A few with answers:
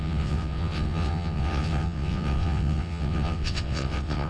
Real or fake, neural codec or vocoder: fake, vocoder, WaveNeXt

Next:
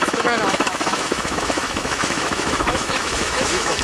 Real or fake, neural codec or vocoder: fake, autoencoder, DAC-VAE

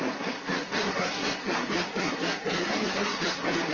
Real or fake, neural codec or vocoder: fake, codec, SNAC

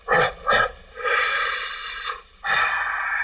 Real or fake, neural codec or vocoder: real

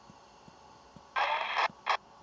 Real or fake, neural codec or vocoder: real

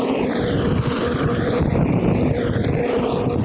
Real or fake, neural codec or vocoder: fake, vocoder, BigVGAN v2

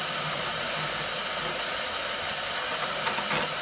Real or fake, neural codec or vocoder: real